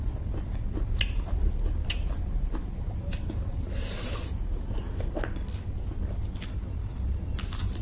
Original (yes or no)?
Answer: yes